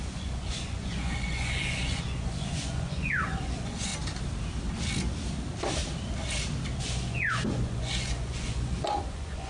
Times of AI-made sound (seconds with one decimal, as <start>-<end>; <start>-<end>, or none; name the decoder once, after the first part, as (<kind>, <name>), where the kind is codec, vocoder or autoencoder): 0.0-3.9 (vocoder, Vocos); 6.8-9.5